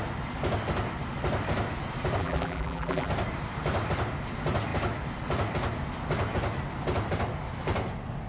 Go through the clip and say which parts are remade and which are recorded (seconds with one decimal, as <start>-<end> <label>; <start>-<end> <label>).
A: 0.0-2.2 recorded; 2.2-3.1 remade; 3.1-8.3 recorded